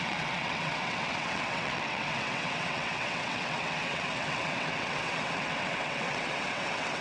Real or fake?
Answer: fake